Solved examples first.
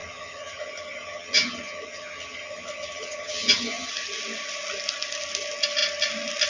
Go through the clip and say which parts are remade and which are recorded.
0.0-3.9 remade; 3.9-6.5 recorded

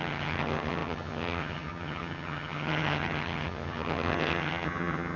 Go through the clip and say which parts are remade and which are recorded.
0.0-5.2 remade

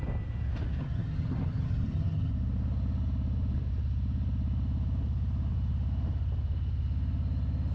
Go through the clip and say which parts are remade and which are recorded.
0.0-0.8 recorded; 0.8-2.3 remade; 2.3-7.7 recorded

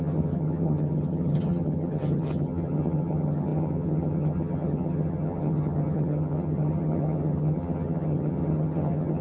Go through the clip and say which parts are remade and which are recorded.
0.0-9.2 remade

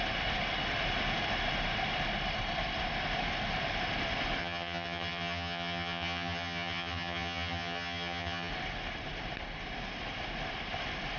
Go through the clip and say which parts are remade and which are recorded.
0.0-4.4 recorded; 4.4-8.5 remade; 8.5-11.2 recorded

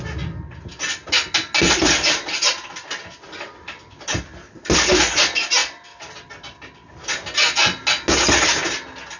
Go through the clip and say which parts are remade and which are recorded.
0.0-9.2 recorded

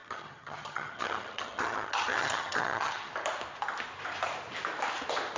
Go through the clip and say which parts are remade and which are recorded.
0.0-3.1 remade; 3.1-5.4 recorded

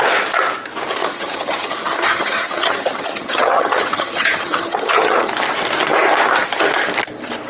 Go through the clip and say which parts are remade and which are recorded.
0.0-1.0 recorded; 1.0-5.3 remade; 5.3-7.5 recorded